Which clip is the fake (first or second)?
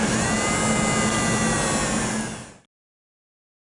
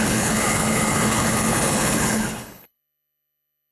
second